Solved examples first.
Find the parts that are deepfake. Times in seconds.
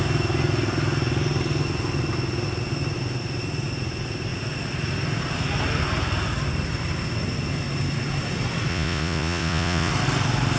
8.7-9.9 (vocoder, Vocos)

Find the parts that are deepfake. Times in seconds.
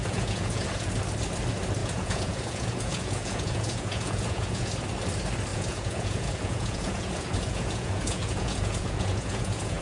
0.0-0.9 (vocoder, Vocos); 1.8-4.7; 5.5-9.8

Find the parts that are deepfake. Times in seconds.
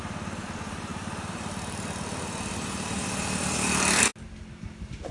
none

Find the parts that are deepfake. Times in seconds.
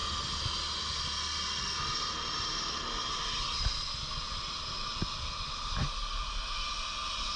none